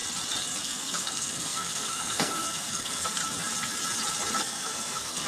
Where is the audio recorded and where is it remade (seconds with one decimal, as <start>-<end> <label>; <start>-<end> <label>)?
0.0-0.6 recorded; 0.6-3.2 remade; 3.2-4.4 recorded; 4.4-5.3 remade